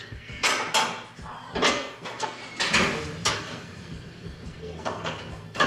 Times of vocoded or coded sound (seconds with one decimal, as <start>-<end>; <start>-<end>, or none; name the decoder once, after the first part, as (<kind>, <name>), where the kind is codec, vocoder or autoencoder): 0.0-0.5 (codec, SNAC); 1.7-2.4; 3.3-5.7